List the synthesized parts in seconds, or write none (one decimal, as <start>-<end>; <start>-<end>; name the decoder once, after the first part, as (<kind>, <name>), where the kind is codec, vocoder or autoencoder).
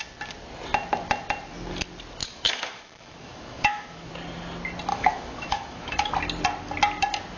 2.2-4.1 (autoencoder, DAC-VAE); 4.9-6.1